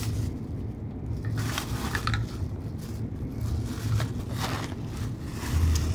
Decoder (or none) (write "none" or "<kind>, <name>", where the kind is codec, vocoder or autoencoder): none